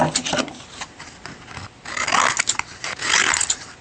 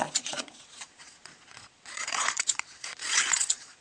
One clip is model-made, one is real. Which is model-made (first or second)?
second